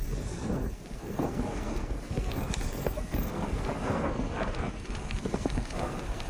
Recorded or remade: remade